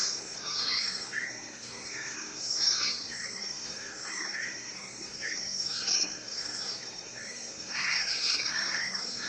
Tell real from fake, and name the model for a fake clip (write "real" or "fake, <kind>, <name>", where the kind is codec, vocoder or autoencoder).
fake, codec, SNAC